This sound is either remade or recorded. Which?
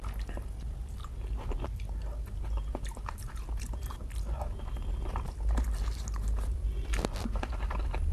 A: recorded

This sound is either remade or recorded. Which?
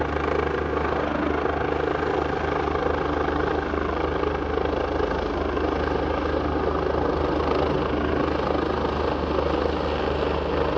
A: recorded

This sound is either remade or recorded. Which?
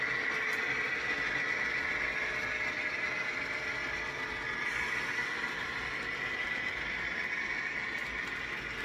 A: recorded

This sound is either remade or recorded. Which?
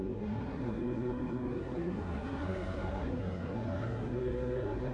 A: remade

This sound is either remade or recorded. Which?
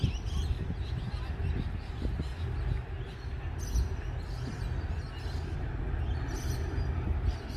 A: recorded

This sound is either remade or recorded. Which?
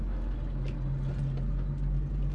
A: recorded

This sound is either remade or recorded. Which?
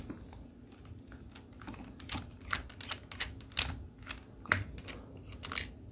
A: recorded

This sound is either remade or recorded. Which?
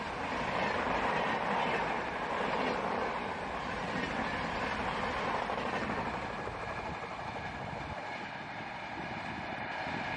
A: recorded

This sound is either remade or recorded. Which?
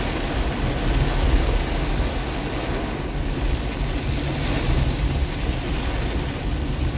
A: recorded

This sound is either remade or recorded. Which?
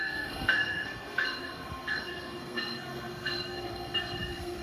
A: remade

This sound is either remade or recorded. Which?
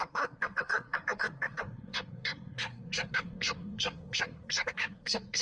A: remade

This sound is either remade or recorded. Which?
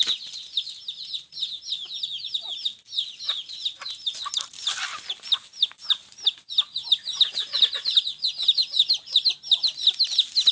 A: recorded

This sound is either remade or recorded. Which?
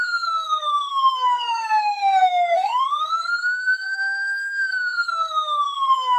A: remade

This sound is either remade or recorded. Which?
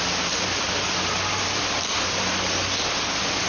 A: recorded